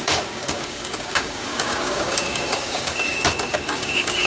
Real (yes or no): no